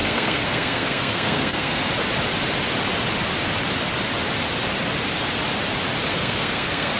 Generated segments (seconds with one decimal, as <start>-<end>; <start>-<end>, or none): 0.0-1.9; 6.1-7.0